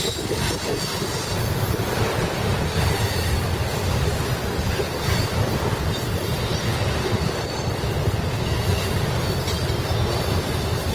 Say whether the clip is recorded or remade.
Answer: recorded